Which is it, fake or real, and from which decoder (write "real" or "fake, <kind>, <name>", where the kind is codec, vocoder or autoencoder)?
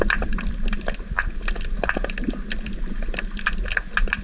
real